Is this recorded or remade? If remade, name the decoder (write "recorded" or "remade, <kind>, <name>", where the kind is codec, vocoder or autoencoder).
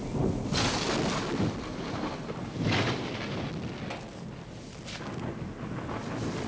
recorded